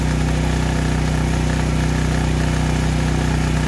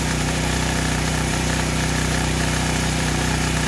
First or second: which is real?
first